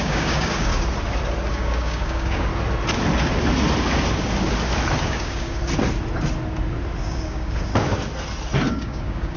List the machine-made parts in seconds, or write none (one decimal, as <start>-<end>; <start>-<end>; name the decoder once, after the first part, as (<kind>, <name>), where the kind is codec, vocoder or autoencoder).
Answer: 0.0-0.7 (codec, DAC); 1.5-2.5; 5.0-5.6; 7.1-7.7; 8.7-9.4